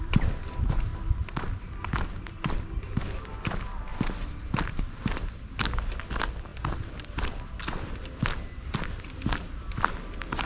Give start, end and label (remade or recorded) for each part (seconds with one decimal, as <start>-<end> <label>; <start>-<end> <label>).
0.0-10.5 recorded